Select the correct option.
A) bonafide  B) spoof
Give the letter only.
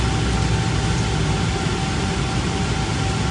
A